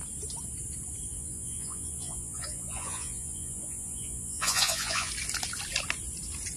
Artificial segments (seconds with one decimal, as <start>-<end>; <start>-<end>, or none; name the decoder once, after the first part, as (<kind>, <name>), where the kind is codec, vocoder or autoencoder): 1.1-5.1 (vocoder, Vocos)

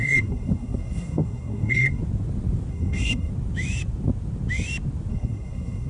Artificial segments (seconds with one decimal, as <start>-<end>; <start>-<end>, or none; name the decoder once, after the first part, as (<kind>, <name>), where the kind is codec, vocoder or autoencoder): 0.0-2.0 (codec, SNAC); 2.7-3.3; 5.1-5.9